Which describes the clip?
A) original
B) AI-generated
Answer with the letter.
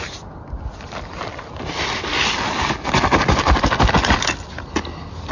A